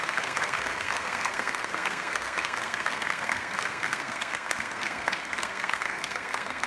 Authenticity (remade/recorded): remade